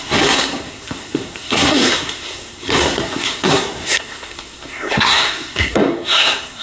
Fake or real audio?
fake